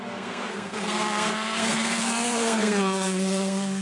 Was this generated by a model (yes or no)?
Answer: yes